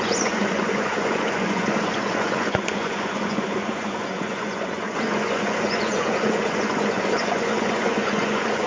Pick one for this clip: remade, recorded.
remade